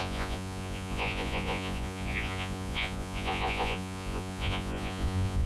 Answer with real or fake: fake